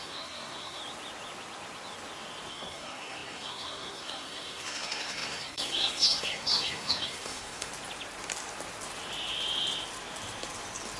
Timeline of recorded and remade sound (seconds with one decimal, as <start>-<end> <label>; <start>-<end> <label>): 0.0-0.8 remade; 0.8-2.5 recorded; 2.5-7.7 remade; 7.7-11.0 recorded